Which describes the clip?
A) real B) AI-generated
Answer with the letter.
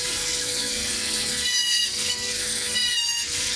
B